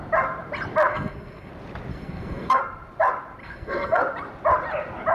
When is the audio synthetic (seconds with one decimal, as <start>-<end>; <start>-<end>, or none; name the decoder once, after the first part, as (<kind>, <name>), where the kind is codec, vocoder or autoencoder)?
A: 0.9-1.5 (codec, SNAC); 1.9-2.6; 3.4-4.0